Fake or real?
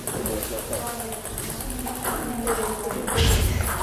real